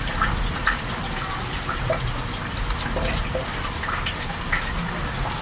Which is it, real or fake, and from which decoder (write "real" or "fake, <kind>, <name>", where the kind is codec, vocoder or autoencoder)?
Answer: real